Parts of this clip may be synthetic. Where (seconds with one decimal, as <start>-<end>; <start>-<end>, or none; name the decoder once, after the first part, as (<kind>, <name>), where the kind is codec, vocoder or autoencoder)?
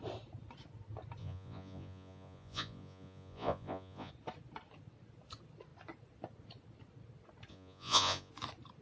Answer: 1.2-4.1 (vocoder, Vocos); 7.5-8.3